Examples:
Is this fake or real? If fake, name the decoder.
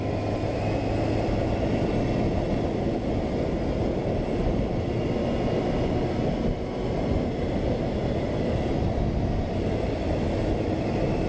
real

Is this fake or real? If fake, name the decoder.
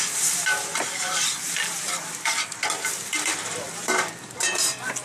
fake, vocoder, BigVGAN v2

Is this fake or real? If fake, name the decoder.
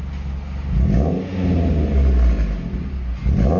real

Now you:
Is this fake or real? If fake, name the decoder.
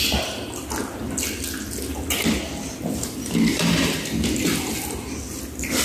real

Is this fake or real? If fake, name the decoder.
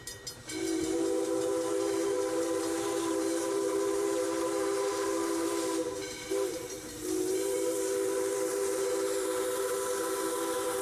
fake, vocoder, BigVGAN v2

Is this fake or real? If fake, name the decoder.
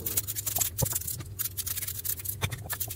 real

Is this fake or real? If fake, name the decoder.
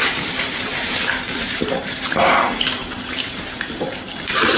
fake, vocoder, BigVGAN v2